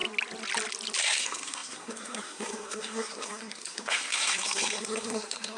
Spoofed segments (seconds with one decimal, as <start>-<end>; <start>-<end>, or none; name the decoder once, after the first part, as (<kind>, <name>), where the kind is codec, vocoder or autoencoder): 1.0-5.6 (codec, SNAC)